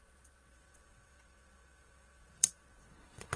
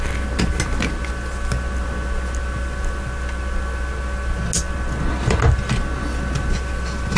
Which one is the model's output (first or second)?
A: first